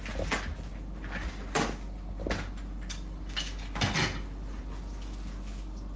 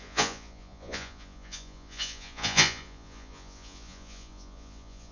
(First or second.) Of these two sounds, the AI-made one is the second